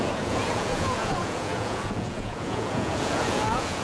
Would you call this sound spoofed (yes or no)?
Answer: yes